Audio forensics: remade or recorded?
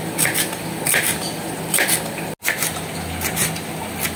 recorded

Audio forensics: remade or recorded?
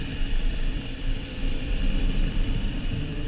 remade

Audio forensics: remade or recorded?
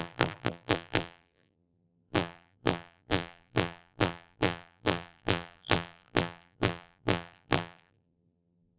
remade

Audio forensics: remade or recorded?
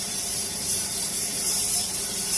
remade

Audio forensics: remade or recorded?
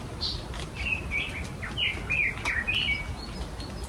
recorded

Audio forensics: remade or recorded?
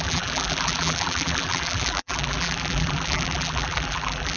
remade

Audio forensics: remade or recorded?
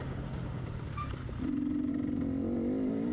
recorded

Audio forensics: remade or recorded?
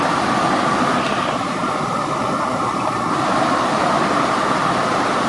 remade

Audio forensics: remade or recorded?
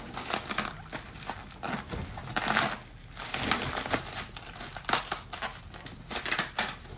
recorded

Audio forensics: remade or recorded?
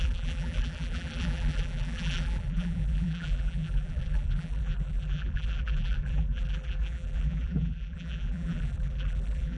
remade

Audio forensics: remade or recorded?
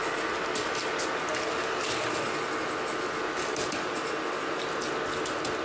recorded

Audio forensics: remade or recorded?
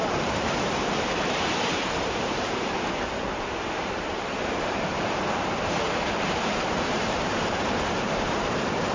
remade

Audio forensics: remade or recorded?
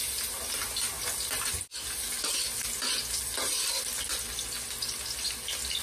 recorded